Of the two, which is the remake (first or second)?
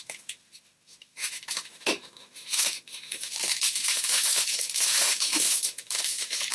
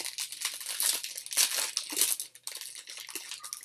first